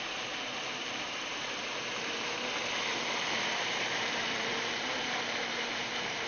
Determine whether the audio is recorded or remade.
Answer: remade